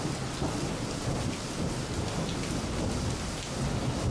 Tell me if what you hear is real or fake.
real